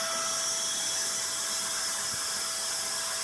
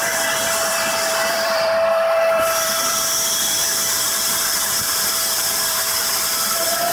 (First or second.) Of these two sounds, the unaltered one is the first